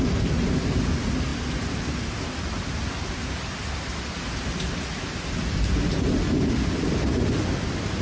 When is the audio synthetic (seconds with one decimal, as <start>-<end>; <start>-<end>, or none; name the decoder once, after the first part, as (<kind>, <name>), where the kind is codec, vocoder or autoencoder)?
none